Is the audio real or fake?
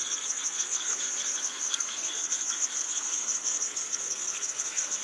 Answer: fake